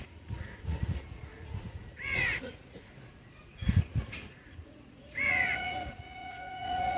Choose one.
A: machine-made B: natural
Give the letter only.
A